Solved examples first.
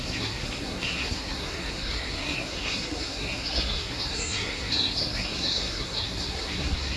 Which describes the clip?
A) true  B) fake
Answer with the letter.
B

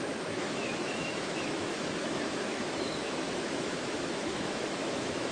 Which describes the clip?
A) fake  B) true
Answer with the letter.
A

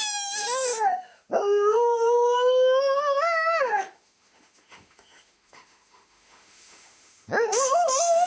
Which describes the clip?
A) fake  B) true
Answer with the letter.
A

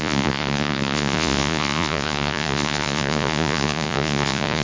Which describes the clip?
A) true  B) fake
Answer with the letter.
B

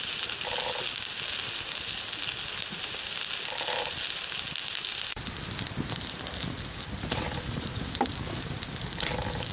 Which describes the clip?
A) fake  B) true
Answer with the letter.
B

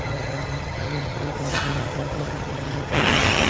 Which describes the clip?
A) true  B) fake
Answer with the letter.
B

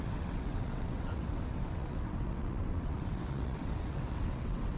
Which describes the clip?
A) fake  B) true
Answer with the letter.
A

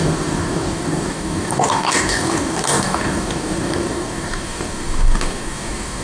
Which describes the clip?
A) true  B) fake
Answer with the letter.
B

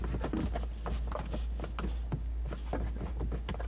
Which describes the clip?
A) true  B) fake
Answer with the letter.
A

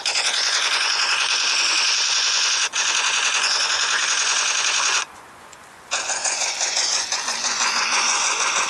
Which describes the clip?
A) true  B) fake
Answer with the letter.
B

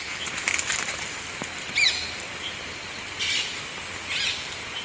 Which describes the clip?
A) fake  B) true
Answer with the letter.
B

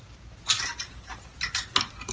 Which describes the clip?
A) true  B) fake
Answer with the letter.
A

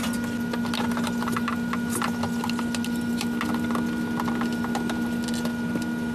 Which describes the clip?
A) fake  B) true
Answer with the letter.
B